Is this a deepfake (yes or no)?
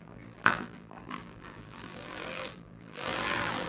yes